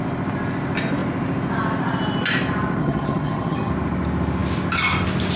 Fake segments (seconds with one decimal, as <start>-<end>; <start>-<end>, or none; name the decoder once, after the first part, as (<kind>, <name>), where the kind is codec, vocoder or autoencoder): 2.8-3.7 (vocoder, HiFi-GAN)